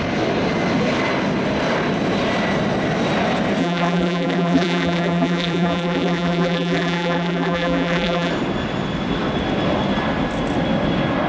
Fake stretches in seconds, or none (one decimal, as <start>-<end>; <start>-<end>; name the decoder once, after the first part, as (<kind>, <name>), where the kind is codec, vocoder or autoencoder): 3.6-8.3 (vocoder, BigVGAN v2)